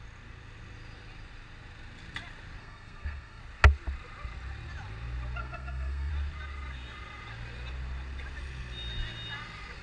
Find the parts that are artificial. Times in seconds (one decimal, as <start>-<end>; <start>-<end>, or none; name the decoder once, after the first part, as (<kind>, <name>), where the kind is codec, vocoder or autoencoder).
2.6-3.4 (codec, SNAC); 5.4-6.1